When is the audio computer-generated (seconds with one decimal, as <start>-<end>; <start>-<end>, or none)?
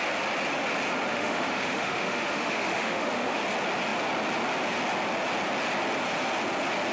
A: 1.1-3.4